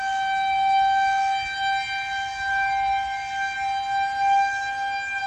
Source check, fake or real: real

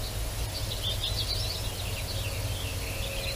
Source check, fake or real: real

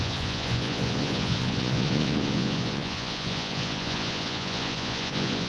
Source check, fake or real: fake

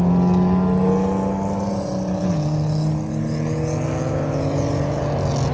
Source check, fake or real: real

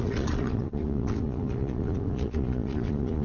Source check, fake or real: fake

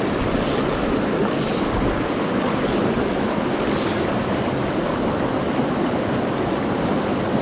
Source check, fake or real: real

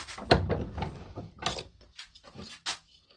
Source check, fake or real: real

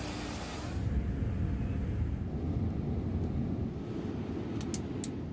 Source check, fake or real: real